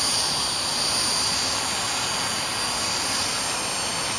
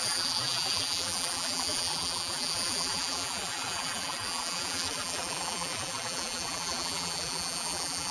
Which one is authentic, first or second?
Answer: first